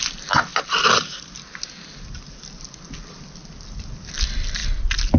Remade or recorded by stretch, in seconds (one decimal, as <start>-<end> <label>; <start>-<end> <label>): 0.0-5.2 recorded